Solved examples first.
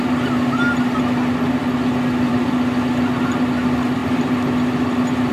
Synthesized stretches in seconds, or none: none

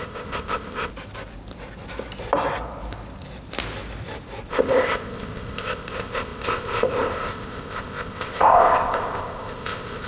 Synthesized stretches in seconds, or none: 0.0-0.9 (codec, ZipCodec); 4.5-10.1

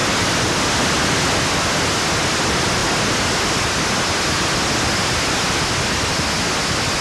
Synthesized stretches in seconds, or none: none

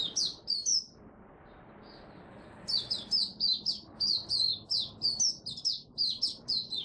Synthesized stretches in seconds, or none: 0.0-4.5 (vocoder, BigVGAN v2); 5.5-6.8

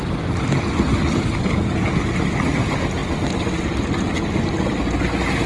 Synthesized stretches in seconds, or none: none